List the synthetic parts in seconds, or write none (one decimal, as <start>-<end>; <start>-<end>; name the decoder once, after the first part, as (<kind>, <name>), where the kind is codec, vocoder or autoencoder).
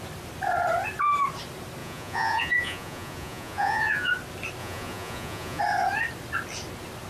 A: 1.8-4.1 (vocoder, Vocos); 4.6-5.6